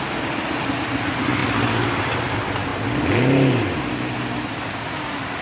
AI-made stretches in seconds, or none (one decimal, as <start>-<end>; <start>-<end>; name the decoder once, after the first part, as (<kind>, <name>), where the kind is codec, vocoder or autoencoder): none